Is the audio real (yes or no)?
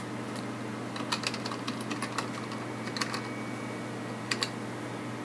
yes